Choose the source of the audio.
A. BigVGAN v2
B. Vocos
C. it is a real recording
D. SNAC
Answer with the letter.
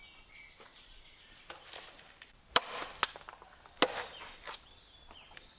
C